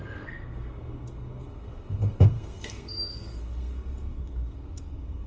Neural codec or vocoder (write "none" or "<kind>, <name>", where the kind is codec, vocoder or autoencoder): codec, SNAC